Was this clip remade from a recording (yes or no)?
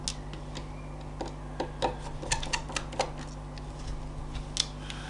no